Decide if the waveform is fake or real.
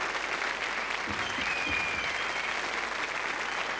real